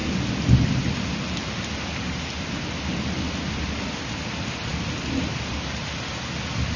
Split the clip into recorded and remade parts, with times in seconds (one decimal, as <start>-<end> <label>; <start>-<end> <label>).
0.0-6.8 recorded